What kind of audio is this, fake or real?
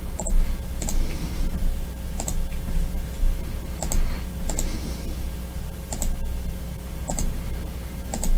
real